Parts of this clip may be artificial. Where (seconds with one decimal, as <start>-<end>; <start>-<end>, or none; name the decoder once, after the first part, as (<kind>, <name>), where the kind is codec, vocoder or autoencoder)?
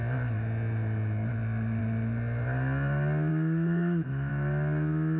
3.3-4.3 (autoencoder, DAC-VAE)